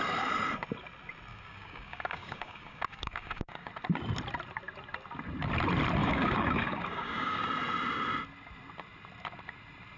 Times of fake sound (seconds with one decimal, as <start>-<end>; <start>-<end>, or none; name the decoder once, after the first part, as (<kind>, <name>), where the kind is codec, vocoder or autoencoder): 1.3-3.7 (codec, DAC); 6.0-7.4